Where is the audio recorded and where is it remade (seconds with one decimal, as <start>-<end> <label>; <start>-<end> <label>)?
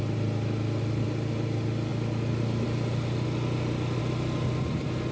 0.0-5.1 recorded